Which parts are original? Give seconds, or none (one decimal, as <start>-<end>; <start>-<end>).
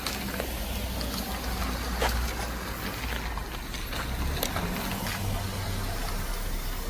0.0-6.9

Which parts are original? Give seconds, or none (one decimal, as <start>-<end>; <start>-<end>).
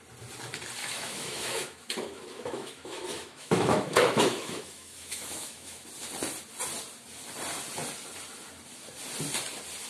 0.0-0.8; 5.9-9.9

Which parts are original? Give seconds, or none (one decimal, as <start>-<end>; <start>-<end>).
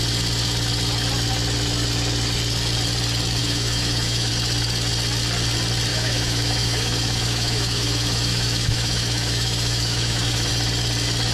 0.0-3.4; 4.3-5.9; 10.5-11.3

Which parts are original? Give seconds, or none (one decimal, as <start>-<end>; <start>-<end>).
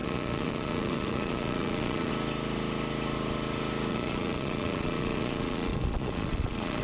2.1-3.9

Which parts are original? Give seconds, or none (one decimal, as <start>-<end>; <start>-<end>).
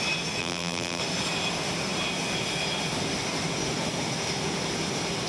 0.0-0.4; 1.0-5.3